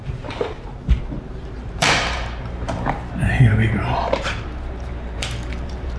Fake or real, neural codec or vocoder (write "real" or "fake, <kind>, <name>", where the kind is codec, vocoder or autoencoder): fake, vocoder, BigVGAN v2